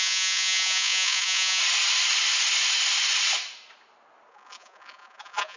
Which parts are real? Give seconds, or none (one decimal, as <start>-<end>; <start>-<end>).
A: 1.6-4.3